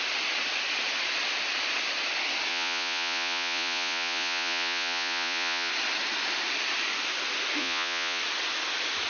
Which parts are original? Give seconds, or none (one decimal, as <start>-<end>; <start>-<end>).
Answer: 0.0-2.5; 5.7-7.6; 8.2-9.1